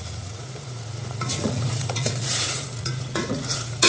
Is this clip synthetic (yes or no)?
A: yes